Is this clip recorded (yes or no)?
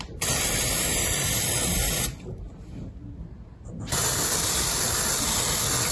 yes